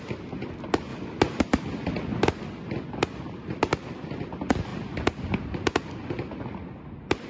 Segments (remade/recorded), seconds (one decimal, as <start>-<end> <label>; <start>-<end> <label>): 0.0-7.3 recorded